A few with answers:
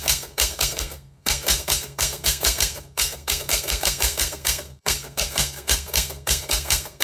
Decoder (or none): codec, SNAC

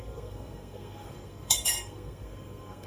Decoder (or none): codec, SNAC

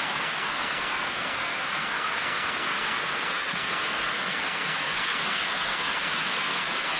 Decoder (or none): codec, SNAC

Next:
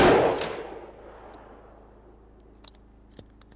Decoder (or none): none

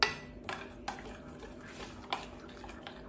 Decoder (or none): none